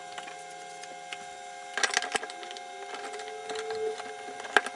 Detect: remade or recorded recorded